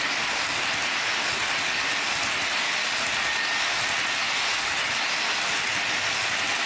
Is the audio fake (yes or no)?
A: no